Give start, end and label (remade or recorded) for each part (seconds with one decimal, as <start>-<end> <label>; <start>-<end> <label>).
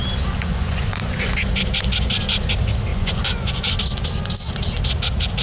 0.0-0.5 recorded; 0.5-1.3 remade; 1.3-2.9 recorded; 2.9-3.7 remade; 3.7-5.4 recorded